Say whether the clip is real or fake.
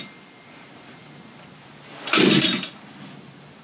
real